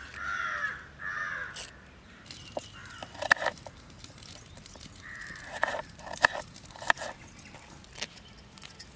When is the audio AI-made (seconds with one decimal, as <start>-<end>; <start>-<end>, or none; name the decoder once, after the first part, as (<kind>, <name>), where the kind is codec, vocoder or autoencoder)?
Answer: 2.8-7.1 (vocoder, BigVGAN v2)